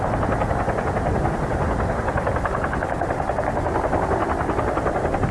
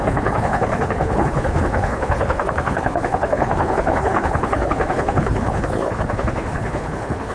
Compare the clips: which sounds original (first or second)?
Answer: first